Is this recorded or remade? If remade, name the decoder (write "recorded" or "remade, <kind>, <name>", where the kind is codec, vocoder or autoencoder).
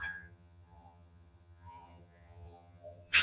remade, vocoder, HiFi-GAN